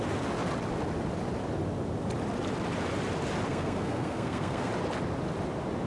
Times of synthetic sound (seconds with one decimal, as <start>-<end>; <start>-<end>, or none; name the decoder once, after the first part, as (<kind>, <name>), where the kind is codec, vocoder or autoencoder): 3.5-4.7 (codec, SNAC)